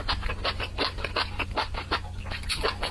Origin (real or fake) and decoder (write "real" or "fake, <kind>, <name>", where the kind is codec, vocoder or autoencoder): real